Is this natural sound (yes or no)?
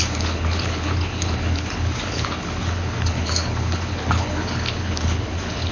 no